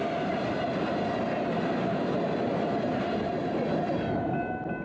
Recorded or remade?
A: recorded